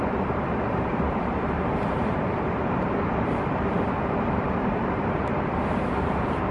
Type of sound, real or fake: fake